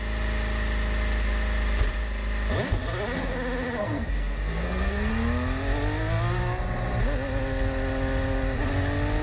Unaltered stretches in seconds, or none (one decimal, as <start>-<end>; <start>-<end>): 0.0-3.8; 5.1-9.2